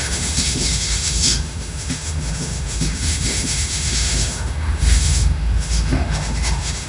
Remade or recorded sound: remade